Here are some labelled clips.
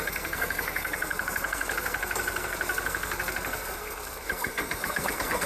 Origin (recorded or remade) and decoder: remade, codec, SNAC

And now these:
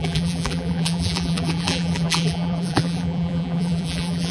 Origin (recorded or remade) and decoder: remade, vocoder, BigVGAN v2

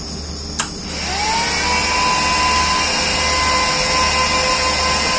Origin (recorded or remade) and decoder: recorded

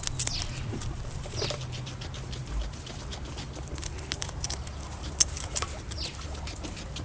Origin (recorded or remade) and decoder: recorded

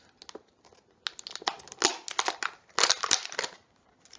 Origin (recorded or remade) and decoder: recorded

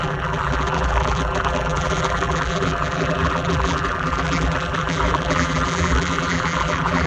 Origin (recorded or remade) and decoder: remade, vocoder, BigVGAN v2